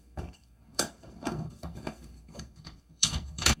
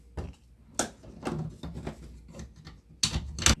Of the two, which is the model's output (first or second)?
first